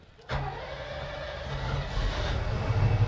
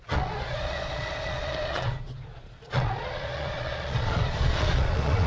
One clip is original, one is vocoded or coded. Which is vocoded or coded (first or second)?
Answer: second